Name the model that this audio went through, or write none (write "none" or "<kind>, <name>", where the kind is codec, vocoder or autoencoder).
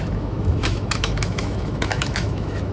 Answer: autoencoder, DAC-VAE